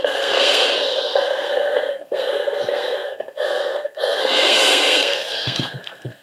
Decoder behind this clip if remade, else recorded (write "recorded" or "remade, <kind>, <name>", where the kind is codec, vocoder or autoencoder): remade, codec, SNAC